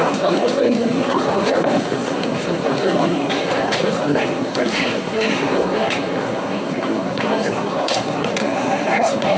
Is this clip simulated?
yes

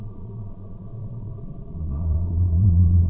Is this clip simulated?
yes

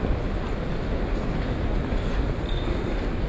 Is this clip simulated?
no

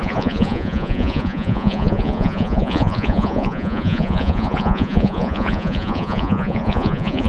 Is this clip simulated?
yes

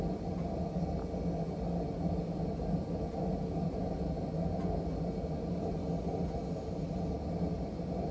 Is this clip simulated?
no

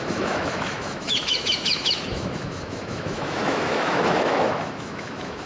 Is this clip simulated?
yes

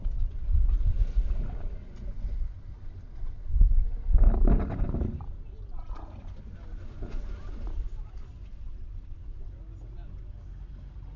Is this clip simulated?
no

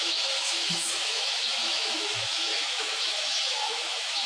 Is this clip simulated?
yes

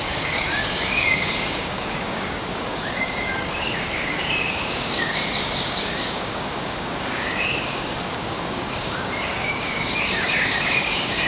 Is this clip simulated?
yes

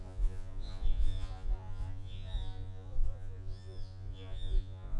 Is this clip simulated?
yes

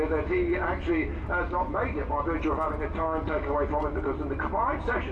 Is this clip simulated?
no